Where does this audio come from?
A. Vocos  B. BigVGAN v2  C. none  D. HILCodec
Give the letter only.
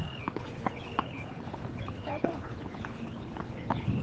D